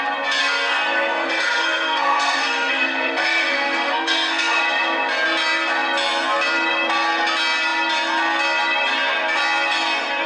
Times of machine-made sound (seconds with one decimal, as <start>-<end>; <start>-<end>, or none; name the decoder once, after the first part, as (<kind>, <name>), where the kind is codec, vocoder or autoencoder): 0.4-4.6 (codec, SNAC)